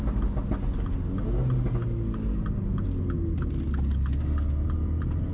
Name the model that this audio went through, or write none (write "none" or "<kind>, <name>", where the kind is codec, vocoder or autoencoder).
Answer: none